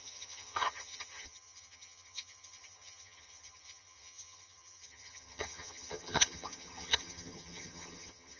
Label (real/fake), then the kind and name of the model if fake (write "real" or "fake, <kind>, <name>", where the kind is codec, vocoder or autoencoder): fake, vocoder, HiFi-GAN